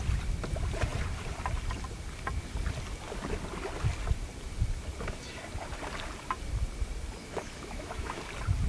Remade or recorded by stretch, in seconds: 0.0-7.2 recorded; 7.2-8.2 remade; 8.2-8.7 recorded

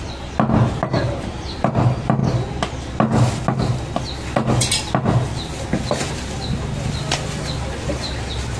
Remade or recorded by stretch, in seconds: 0.0-8.6 recorded

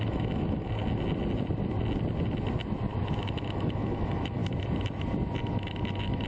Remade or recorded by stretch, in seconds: 0.0-0.8 remade; 0.8-3.2 recorded; 3.2-4.4 remade; 4.4-5.4 recorded; 5.4-6.3 remade

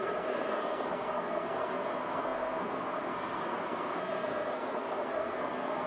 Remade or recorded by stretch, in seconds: 0.0-5.9 remade

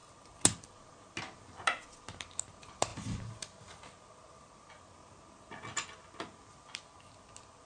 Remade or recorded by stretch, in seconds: 0.0-7.7 recorded

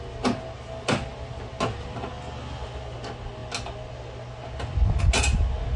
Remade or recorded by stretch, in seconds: 0.0-5.8 recorded

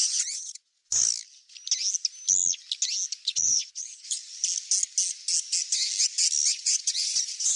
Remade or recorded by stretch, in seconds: 0.0-1.0 remade; 1.0-3.2 recorded; 3.2-4.2 remade; 4.2-6.5 recorded; 6.5-7.6 remade

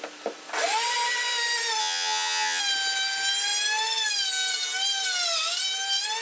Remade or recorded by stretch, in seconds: 0.0-1.8 recorded; 1.8-2.6 remade; 2.6-6.2 recorded